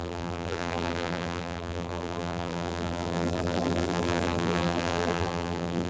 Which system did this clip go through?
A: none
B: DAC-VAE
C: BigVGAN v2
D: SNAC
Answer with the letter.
C